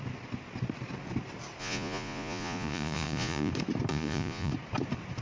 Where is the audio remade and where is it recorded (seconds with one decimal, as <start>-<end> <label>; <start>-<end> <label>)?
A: 0.0-1.6 recorded; 1.6-3.5 remade; 3.5-3.9 recorded; 3.9-4.5 remade; 4.5-5.2 recorded